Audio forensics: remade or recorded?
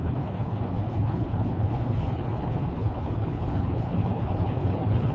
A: remade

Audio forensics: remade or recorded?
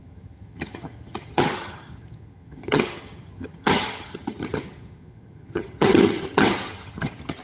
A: remade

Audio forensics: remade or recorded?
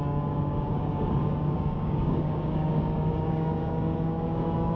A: remade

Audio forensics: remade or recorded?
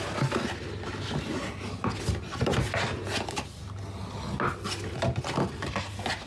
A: recorded